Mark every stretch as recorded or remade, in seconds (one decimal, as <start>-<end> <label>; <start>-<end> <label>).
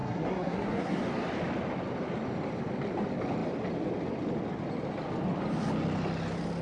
0.0-1.0 remade; 1.0-6.6 recorded